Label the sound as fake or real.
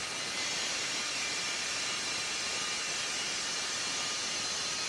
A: real